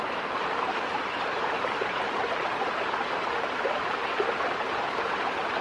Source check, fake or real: fake